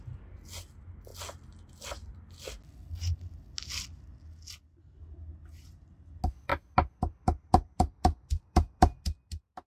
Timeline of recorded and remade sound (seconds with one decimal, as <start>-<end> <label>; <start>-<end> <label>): 0.0-9.7 recorded